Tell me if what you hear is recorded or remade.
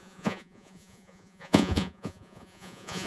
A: remade